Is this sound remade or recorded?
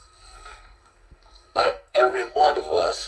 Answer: remade